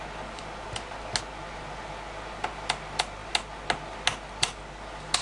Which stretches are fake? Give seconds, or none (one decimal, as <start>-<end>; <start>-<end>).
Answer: none